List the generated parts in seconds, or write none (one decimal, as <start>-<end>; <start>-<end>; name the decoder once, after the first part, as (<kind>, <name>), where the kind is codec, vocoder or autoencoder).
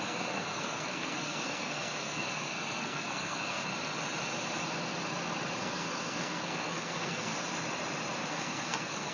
0.0-3.7 (codec, SNAC); 5.6-7.3; 8.3-9.1